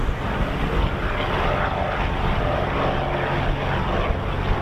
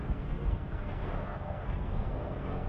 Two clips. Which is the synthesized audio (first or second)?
second